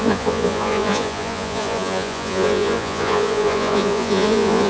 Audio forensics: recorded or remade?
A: remade